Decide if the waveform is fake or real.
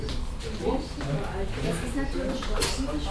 real